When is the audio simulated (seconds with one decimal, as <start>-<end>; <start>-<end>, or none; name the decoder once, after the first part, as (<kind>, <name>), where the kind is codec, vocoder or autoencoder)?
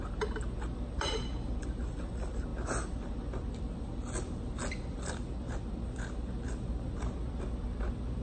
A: none